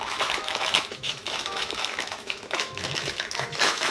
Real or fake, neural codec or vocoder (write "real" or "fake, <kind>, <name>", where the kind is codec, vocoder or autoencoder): fake, autoencoder, DAC-VAE